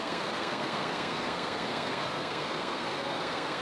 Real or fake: fake